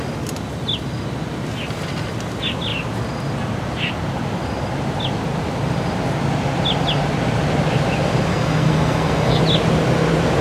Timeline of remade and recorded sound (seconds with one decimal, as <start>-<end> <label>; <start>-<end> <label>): 0.0-8.3 recorded; 8.3-9.4 remade; 9.4-10.4 recorded